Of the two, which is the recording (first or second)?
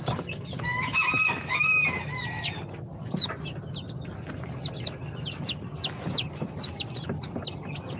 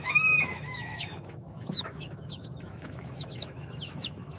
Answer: first